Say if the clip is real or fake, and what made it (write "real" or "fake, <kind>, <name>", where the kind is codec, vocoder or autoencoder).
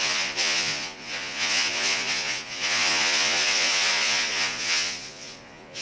fake, vocoder, Vocos